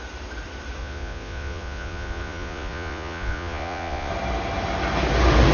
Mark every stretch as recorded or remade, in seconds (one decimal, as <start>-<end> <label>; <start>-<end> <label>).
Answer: 0.0-0.8 recorded; 0.8-4.1 remade; 4.1-5.5 recorded